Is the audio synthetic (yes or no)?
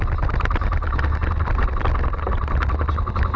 no